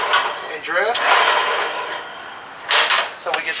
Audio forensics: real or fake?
real